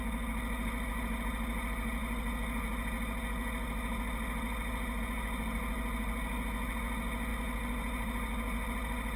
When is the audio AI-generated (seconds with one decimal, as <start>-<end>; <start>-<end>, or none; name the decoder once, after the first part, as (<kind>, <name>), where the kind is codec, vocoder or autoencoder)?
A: none